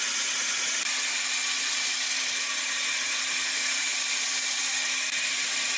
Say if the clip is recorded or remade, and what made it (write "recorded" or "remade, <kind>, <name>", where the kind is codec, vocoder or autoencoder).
recorded